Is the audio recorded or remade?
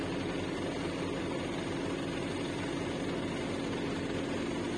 recorded